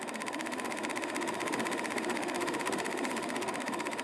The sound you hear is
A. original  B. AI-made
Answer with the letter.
B